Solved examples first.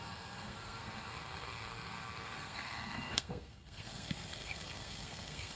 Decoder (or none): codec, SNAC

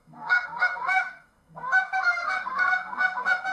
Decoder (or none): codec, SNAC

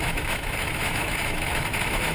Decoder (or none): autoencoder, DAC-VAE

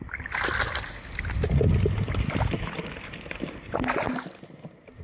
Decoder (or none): none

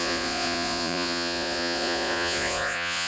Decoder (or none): vocoder, Vocos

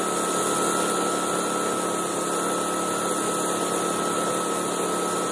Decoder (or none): none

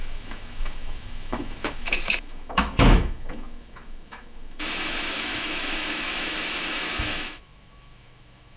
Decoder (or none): autoencoder, DAC-VAE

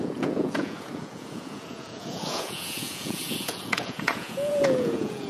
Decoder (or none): vocoder, Vocos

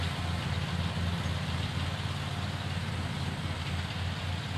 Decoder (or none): none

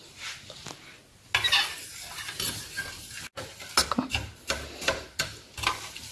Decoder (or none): none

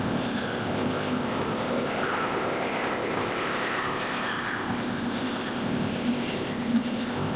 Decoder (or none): codec, ZipCodec